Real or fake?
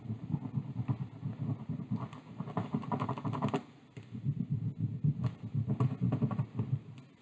real